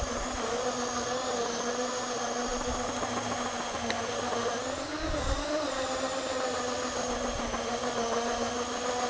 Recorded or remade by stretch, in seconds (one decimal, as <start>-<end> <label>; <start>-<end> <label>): 0.0-9.1 recorded